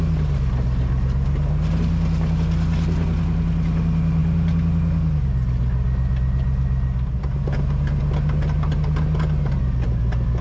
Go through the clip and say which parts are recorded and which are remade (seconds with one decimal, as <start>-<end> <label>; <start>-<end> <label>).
0.0-10.4 recorded